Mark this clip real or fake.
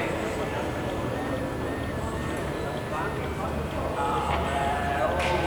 fake